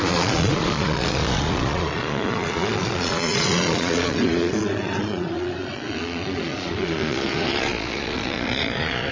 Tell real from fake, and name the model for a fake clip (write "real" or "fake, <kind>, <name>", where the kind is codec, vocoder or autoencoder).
fake, vocoder, Vocos